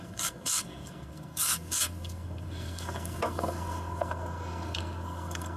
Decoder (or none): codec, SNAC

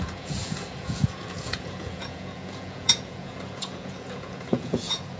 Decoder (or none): vocoder, Vocos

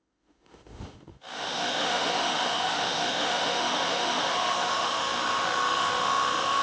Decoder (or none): autoencoder, DAC-VAE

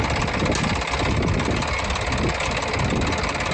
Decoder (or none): none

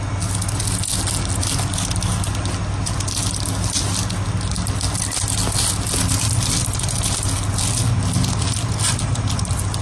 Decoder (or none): none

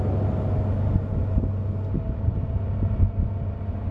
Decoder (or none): none